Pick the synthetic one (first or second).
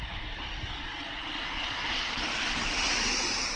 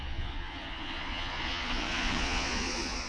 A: second